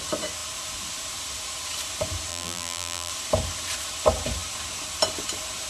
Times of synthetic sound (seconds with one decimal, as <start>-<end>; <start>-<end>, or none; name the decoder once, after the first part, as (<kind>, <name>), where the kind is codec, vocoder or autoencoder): 2.3-3.1 (vocoder, BigVGAN v2)